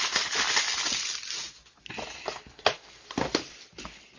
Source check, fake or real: real